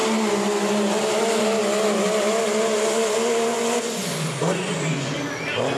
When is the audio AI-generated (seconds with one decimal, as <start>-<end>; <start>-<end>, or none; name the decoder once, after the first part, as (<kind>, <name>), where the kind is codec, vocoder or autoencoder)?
3.5-5.1 (vocoder, Vocos)